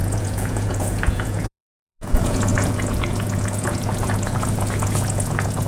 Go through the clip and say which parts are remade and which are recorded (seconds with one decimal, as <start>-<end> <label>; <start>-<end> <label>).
0.0-5.7 remade